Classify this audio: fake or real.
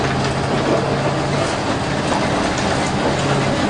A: real